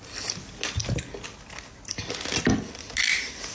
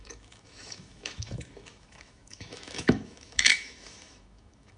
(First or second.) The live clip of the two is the first